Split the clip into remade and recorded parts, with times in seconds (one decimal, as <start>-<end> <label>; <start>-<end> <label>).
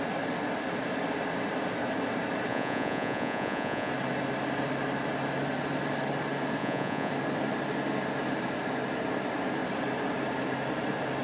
0.0-2.5 recorded; 2.5-3.9 remade; 3.9-6.6 recorded; 6.6-7.1 remade; 7.1-11.2 recorded